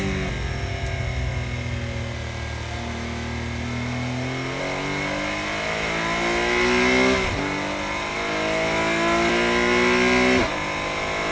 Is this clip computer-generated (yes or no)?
no